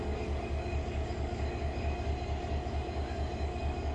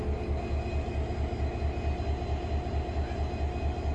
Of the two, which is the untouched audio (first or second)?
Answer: second